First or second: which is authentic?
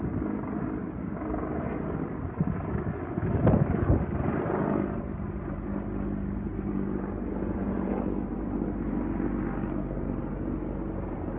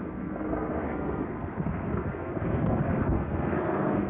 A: first